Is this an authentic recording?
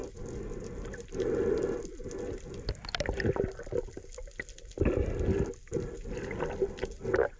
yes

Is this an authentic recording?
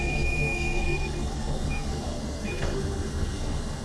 no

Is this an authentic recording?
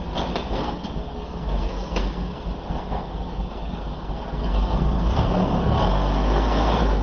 no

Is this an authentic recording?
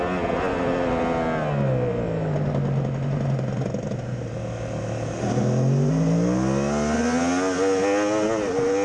yes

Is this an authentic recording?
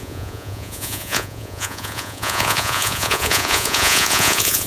no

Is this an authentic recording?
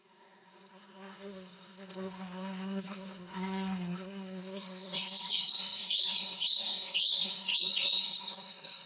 no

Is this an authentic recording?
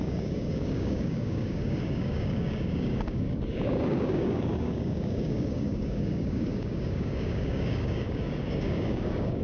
no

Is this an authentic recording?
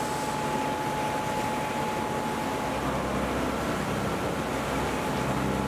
yes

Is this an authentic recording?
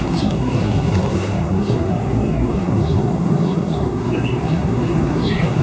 no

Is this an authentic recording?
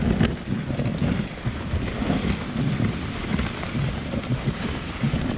yes